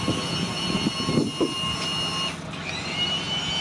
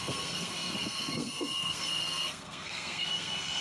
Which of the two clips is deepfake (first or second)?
second